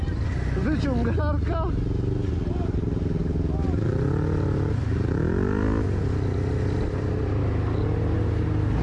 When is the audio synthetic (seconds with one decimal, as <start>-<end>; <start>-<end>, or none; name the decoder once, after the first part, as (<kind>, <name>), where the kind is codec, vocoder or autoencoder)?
none